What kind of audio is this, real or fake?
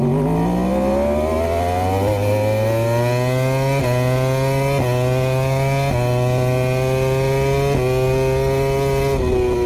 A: real